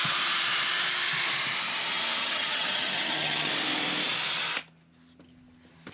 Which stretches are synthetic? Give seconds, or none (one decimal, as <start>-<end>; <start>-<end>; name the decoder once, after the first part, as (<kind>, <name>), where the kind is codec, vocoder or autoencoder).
2.2-3.5 (vocoder, HiFi-GAN)